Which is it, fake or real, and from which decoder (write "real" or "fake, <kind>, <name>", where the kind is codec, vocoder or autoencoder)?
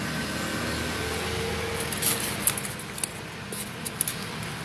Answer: real